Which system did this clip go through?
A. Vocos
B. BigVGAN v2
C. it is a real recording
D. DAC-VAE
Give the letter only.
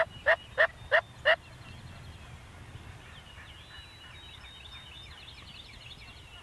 C